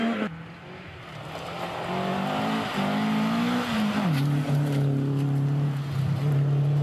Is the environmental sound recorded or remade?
recorded